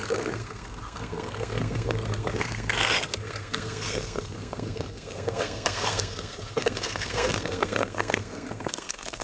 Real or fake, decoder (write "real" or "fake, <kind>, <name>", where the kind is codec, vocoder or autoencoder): fake, codec, SNAC